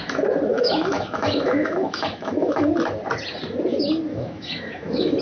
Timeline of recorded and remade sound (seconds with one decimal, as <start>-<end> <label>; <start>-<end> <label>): 0.0-0.5 recorded; 0.5-2.7 remade; 2.7-4.1 recorded; 4.1-5.2 remade